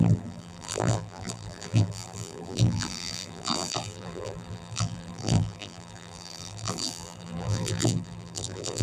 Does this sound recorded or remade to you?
remade